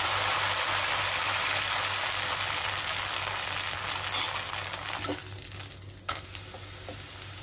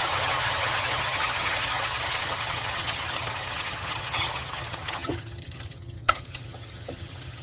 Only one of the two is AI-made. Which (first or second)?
second